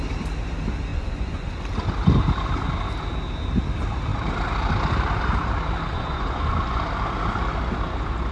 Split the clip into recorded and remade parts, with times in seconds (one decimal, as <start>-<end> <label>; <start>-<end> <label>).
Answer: 0.0-0.9 recorded; 0.9-1.6 remade; 1.6-5.9 recorded; 5.9-6.8 remade; 6.8-8.3 recorded